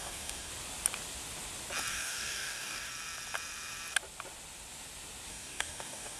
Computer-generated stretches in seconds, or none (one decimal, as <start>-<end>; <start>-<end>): 0.0-0.5; 1.9-2.9; 5.3-6.2